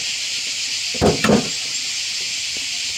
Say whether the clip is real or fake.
real